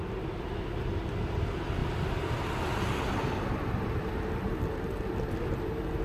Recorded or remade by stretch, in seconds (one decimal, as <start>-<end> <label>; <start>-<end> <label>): 0.0-1.8 recorded; 1.8-5.4 remade; 5.4-6.0 recorded